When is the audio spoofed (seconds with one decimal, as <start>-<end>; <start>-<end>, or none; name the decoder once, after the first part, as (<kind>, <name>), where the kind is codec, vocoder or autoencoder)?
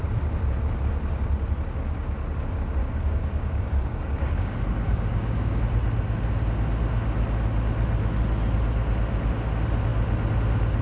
2.8-5.6 (codec, DAC)